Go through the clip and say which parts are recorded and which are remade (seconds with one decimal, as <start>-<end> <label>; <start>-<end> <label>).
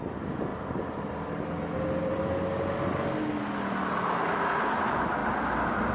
0.0-0.5 recorded; 0.5-2.2 remade; 2.2-5.2 recorded; 5.2-5.9 remade